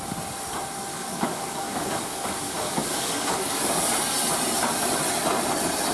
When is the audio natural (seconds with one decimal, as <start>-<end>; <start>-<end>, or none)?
0.0-0.9; 3.6-5.9